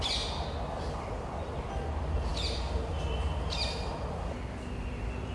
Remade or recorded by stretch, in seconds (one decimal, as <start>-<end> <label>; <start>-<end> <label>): 0.0-5.3 recorded